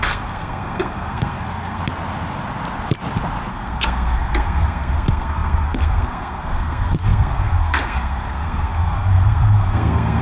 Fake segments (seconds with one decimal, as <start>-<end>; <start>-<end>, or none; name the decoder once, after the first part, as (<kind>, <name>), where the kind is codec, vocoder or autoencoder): 0.0-1.8 (codec, SNAC); 3.5-10.2